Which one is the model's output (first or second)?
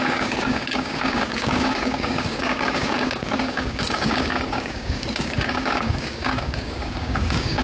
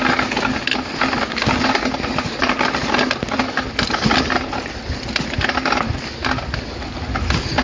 first